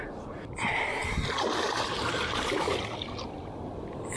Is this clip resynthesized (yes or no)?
no